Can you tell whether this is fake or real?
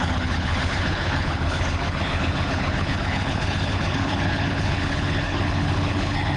fake